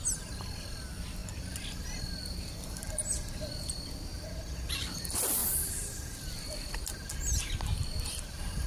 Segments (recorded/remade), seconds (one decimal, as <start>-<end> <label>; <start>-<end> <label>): 0.0-1.2 remade; 1.2-1.7 recorded; 1.7-4.1 remade; 4.1-4.8 recorded; 4.8-5.4 remade; 5.4-8.1 recorded; 8.1-8.7 remade